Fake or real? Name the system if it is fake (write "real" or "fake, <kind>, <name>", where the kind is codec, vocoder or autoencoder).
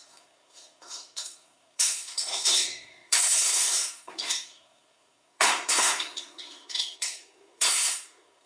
fake, codec, SNAC